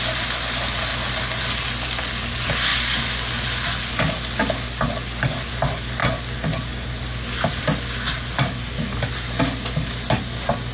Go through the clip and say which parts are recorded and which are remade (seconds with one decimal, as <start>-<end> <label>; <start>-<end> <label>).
0.0-10.7 recorded